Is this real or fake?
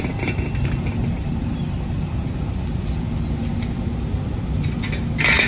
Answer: real